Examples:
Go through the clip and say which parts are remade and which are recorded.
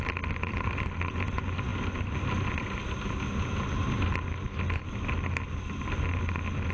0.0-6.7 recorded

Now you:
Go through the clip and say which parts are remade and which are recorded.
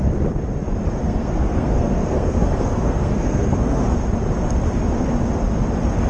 0.0-1.0 recorded; 1.0-3.8 remade; 3.8-6.1 recorded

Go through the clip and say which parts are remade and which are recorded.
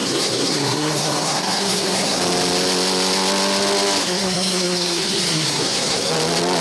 0.0-2.2 remade; 2.2-4.0 recorded; 4.0-6.1 remade; 6.1-6.6 recorded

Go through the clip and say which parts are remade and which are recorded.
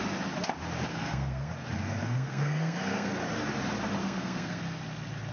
0.0-0.9 recorded; 0.9-1.5 remade; 1.5-2.0 recorded; 2.0-3.1 remade; 3.1-4.0 recorded; 4.0-4.6 remade; 4.6-5.3 recorded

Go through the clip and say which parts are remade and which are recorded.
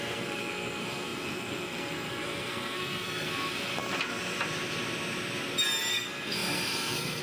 0.0-3.7 remade; 3.7-5.9 recorded; 5.9-7.2 remade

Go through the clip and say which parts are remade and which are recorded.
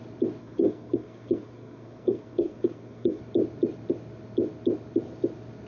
0.0-0.4 recorded; 0.4-3.2 remade; 3.2-5.7 recorded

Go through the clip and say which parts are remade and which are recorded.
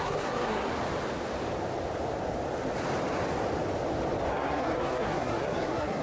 0.0-0.7 remade; 0.7-4.3 recorded; 4.3-6.0 remade